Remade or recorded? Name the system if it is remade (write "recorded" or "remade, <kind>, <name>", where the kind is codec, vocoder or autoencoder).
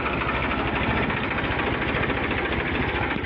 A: recorded